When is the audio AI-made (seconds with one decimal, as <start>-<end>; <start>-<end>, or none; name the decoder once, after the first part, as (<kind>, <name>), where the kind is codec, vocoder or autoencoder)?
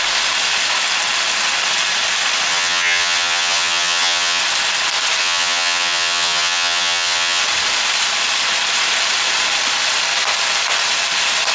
2.5-4.4 (vocoder, HiFi-GAN); 5.2-7.4